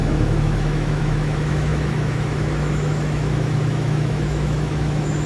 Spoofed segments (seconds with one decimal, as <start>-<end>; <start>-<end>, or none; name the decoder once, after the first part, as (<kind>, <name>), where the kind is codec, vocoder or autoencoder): 0.0-5.3 (autoencoder, DAC-VAE)